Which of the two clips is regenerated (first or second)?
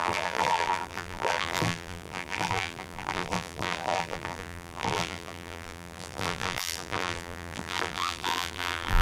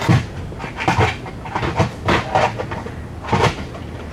first